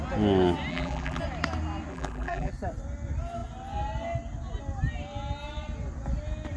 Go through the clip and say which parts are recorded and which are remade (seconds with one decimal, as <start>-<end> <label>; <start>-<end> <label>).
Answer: 0.0-0.7 recorded; 0.7-1.2 remade; 1.2-1.9 recorded; 1.9-2.5 remade; 2.5-6.6 recorded